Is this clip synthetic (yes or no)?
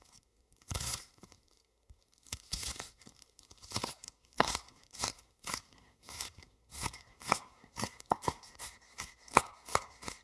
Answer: yes